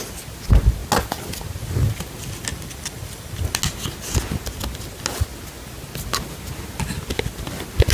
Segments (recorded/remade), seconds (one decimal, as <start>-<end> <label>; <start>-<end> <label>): 0.0-2.5 recorded; 2.5-3.6 remade; 3.6-7.9 recorded